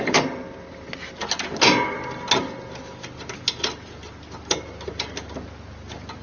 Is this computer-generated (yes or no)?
no